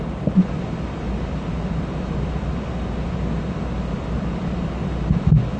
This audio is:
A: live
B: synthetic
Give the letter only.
A